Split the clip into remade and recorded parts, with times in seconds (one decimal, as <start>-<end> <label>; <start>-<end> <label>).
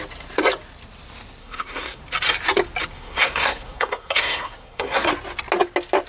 0.0-1.4 recorded; 1.4-2.0 remade; 2.0-3.0 recorded; 3.0-5.1 remade; 5.1-6.1 recorded